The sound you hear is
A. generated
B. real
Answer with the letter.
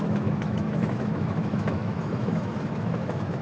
A